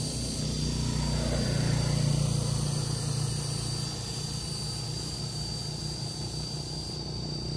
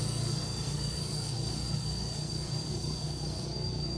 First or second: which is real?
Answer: first